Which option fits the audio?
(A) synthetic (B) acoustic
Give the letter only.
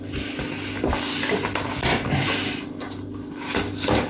B